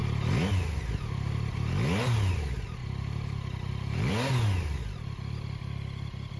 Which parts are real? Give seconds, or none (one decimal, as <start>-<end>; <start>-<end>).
0.0-6.4